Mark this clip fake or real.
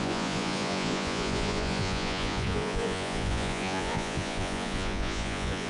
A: fake